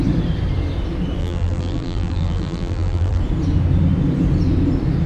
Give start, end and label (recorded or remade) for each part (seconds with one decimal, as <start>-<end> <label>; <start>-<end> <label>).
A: 0.0-1.2 recorded; 1.2-3.2 remade; 3.2-5.1 recorded